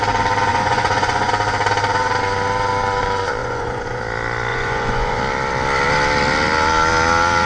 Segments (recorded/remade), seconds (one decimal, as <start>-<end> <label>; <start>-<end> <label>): 0.0-0.5 recorded; 0.5-1.3 remade; 1.3-3.4 recorded; 3.4-4.0 remade; 4.0-4.5 recorded; 4.5-5.2 remade; 5.2-7.5 recorded

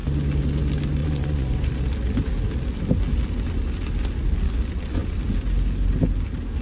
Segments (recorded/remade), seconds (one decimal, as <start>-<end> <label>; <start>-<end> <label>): 0.0-1.0 recorded; 1.0-1.7 remade; 1.7-6.6 recorded

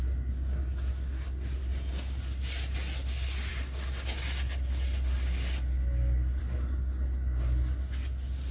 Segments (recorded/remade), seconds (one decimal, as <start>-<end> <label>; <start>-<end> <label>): 0.0-8.5 recorded